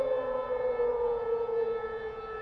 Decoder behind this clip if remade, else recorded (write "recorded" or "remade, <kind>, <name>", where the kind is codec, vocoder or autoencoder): remade, vocoder, Vocos